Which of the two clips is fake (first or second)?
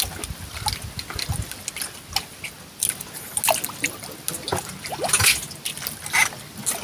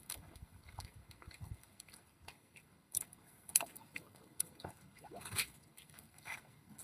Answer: second